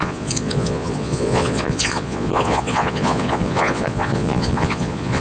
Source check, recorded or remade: remade